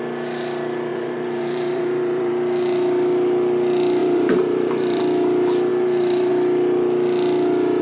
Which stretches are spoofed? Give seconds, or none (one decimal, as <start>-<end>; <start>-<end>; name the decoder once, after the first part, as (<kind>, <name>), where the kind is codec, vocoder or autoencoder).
0.9-2.3 (vocoder, BigVGAN v2); 4.0-5.0; 5.7-6.3